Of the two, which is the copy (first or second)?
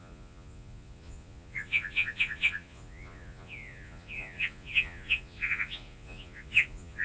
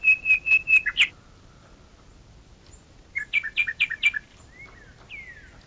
first